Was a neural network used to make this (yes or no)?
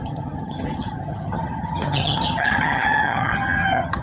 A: yes